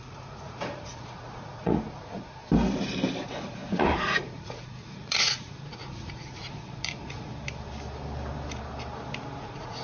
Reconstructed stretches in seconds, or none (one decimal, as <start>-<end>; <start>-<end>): 0.0-2.4; 3.2-7.3; 9.4-9.8